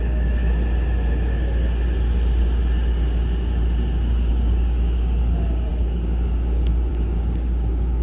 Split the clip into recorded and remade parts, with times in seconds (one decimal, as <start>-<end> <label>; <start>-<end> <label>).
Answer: 0.0-0.4 remade; 0.4-4.3 recorded; 4.3-8.0 remade